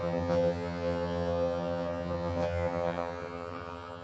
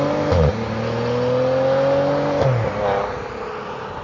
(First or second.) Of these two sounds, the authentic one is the second